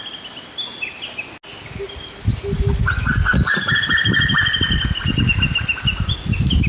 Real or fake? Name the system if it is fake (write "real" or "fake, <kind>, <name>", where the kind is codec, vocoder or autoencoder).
real